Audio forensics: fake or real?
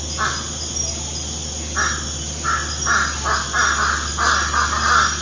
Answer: real